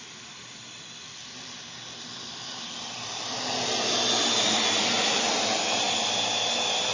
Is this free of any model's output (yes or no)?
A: yes